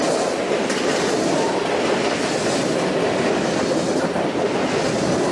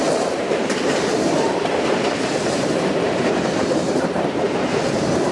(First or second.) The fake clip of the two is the second